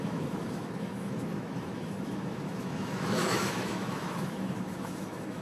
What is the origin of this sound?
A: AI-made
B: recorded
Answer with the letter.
A